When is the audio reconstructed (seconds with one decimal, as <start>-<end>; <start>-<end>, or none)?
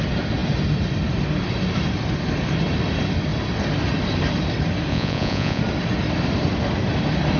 4.9-5.6